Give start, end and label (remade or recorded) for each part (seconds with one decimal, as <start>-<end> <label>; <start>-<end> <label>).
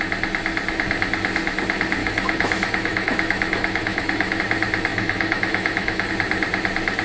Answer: 0.0-2.0 recorded; 2.0-4.4 remade; 4.4-4.9 recorded; 4.9-6.1 remade; 6.1-7.0 recorded